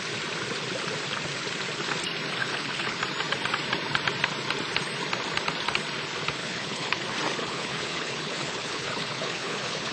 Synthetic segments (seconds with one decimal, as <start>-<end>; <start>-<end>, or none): 2.4-3.0; 6.4-7.0; 7.4-9.9